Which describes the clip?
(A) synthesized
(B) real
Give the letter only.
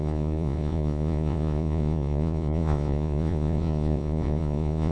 A